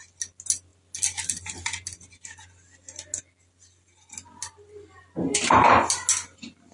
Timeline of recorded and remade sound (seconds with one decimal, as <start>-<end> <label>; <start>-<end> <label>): 0.0-6.7 recorded